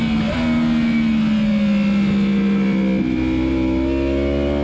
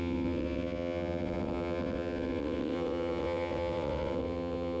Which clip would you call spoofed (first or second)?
second